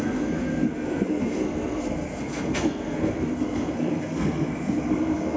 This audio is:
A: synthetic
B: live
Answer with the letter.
A